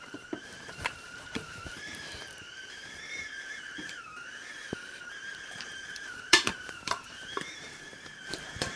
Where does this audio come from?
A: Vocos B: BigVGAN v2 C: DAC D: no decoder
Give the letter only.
B